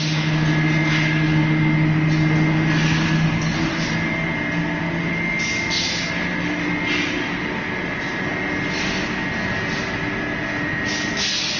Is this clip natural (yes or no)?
yes